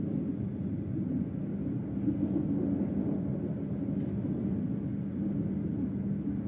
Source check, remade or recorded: recorded